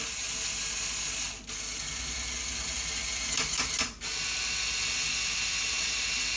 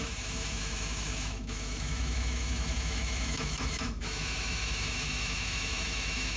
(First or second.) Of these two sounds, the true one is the first